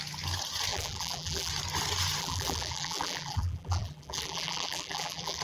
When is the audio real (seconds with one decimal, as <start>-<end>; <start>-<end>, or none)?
0.0-0.7; 1.5-2.2